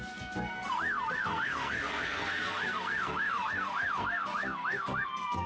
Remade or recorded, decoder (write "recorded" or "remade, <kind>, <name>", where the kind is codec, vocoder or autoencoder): remade, codec, SNAC